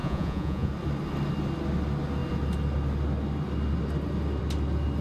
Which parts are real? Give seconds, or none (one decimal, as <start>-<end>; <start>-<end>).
0.7-5.0